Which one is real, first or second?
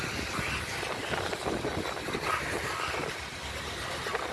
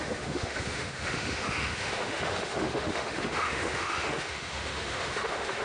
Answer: first